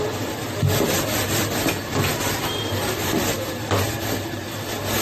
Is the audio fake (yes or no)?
no